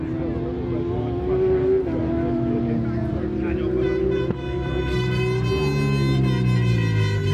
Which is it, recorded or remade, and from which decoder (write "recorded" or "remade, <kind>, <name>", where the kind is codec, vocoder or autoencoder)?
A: recorded